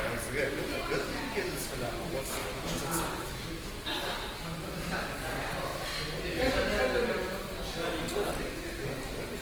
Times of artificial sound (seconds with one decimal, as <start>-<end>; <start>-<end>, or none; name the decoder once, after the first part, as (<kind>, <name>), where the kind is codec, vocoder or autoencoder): 2.4-3.7 (autoencoder, DAC-VAE)